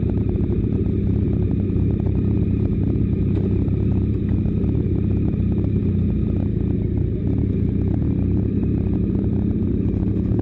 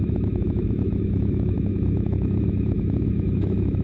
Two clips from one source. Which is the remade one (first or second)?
second